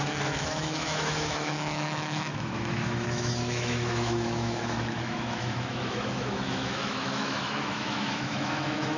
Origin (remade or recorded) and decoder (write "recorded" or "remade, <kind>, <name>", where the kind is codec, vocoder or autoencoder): remade, autoencoder, DAC-VAE